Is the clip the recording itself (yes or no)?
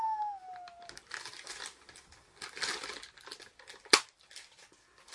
yes